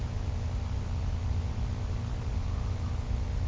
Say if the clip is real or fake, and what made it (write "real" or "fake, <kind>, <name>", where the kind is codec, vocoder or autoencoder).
fake, vocoder, BigVGAN v2